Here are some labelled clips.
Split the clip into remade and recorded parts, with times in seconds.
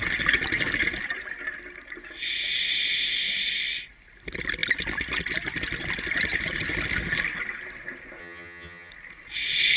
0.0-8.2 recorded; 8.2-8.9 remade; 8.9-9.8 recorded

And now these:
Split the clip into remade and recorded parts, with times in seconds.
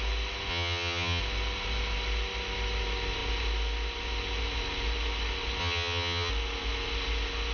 0.0-0.5 recorded; 0.5-1.2 remade; 1.2-5.6 recorded; 5.6-6.3 remade; 6.3-7.5 recorded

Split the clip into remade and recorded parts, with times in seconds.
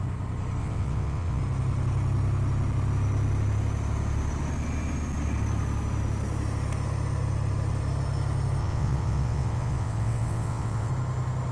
0.0-0.6 recorded; 0.6-1.4 remade; 1.4-8.6 recorded; 8.6-10.9 remade; 10.9-11.5 recorded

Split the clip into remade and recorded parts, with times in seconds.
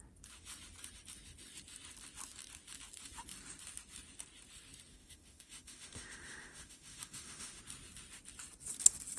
0.0-4.9 recorded; 4.9-7.6 remade; 7.6-9.2 recorded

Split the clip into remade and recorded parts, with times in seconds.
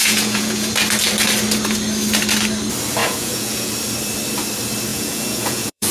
0.0-0.7 remade; 0.7-3.0 recorded; 3.0-3.7 remade; 3.7-4.9 recorded; 4.9-5.9 remade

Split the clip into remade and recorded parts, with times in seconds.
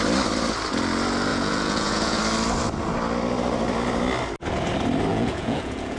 0.0-1.3 recorded; 1.3-2.2 remade; 2.2-5.1 recorded; 5.1-6.0 remade